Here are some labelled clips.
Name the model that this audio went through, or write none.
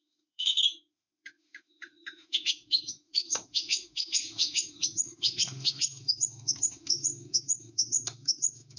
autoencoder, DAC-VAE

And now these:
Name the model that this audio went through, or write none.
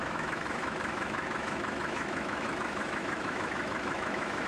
autoencoder, DAC-VAE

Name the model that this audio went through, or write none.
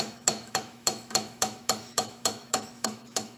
autoencoder, DAC-VAE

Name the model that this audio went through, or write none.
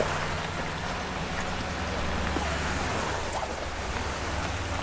none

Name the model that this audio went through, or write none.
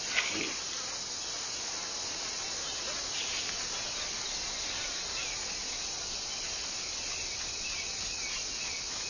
none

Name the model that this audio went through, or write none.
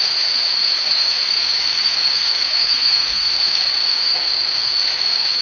autoencoder, DAC-VAE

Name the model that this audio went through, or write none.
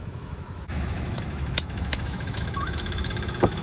autoencoder, DAC-VAE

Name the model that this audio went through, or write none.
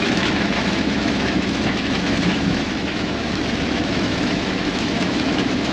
autoencoder, DAC-VAE